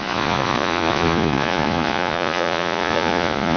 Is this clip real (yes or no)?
no